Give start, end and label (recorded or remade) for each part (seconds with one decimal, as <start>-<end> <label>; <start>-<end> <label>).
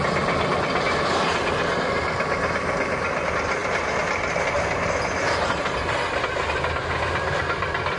0.0-8.0 recorded